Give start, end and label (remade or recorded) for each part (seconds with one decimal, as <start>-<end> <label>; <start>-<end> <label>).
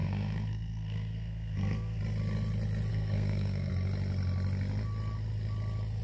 0.0-2.0 remade; 2.0-2.9 recorded; 2.9-3.7 remade; 3.7-6.0 recorded